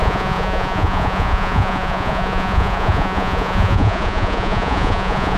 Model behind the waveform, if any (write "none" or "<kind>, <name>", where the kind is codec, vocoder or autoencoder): vocoder, Vocos